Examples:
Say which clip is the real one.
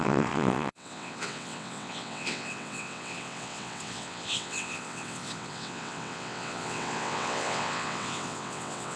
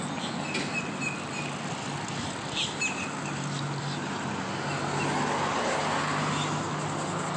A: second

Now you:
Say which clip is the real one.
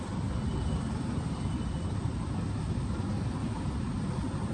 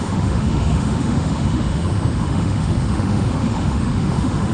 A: first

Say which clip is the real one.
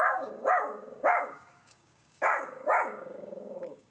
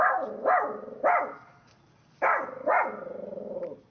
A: second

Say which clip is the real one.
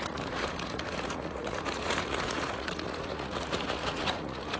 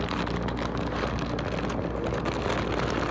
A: second